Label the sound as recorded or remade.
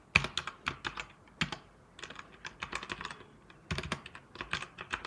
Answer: recorded